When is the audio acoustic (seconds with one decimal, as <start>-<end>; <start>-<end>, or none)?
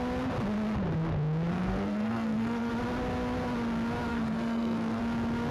0.0-1.5; 2.7-4.1; 5.0-5.5